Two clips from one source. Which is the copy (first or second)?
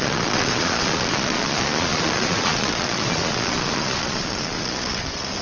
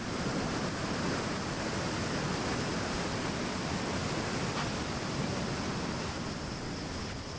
first